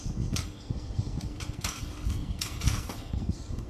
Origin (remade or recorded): remade